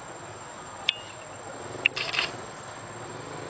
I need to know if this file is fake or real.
real